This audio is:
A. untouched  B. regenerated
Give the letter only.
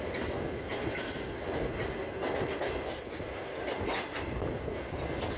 A